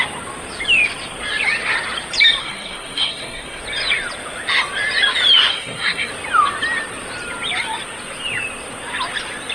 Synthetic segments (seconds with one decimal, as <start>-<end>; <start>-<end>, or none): 2.4-3.6; 5.5-6.1